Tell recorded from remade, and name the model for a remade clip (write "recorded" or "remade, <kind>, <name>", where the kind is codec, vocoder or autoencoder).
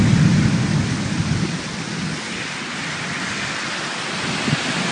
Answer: recorded